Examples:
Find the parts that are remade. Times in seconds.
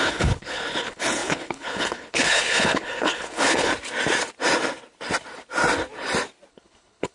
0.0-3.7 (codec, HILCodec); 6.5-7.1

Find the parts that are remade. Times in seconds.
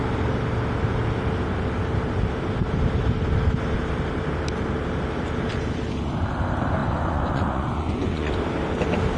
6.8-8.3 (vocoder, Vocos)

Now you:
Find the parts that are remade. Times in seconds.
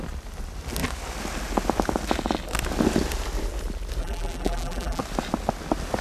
4.0-5.0 (vocoder, BigVGAN v2)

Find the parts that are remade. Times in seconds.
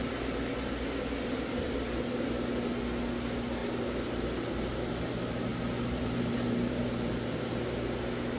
5.5-7.8 (vocoder, BigVGAN v2)